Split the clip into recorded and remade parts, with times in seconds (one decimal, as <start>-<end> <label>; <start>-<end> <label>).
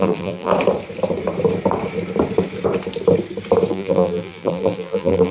0.0-0.5 remade; 0.5-3.7 recorded; 3.7-5.3 remade